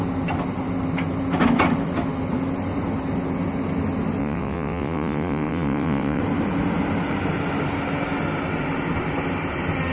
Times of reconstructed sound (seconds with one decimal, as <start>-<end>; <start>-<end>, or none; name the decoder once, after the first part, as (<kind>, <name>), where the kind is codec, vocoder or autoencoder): 4.2-6.2 (vocoder, WaveNeXt)